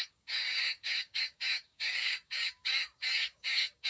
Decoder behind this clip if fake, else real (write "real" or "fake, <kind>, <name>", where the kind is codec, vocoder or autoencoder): fake, codec, DAC